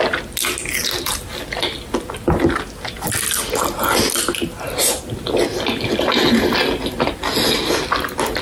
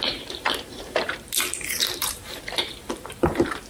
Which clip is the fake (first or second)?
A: second